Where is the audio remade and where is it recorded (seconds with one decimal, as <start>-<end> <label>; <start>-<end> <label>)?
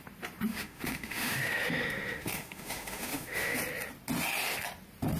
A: 0.0-0.5 recorded; 0.5-3.6 remade; 3.6-5.2 recorded